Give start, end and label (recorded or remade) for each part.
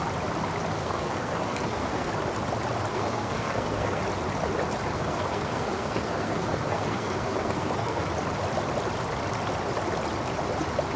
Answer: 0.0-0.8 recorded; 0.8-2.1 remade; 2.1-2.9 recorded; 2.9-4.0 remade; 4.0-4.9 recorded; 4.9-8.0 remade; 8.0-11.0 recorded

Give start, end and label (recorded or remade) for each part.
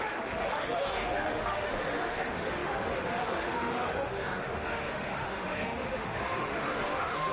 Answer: 0.0-7.3 remade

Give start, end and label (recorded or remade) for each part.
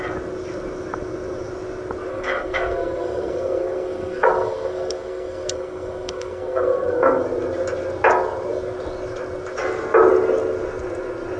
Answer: 0.0-2.1 recorded; 2.1-7.2 remade; 7.2-11.4 recorded